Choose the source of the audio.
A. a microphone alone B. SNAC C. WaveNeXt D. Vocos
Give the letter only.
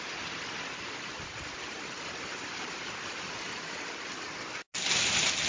A